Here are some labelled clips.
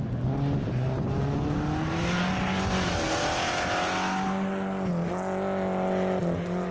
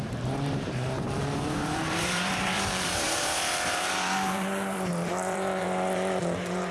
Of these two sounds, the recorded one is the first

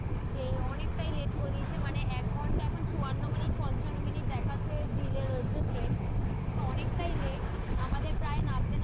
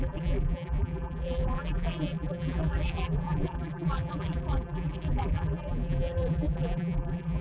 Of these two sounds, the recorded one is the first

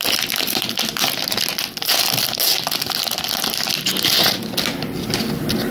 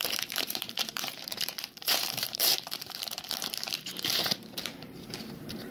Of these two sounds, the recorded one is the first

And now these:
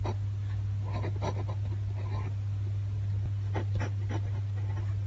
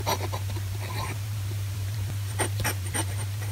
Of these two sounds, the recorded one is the first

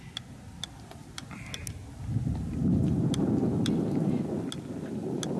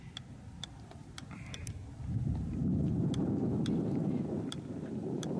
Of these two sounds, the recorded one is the first